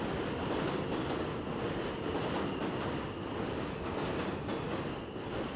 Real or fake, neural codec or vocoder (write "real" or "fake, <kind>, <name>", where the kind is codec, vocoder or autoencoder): real